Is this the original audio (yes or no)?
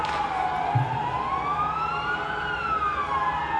yes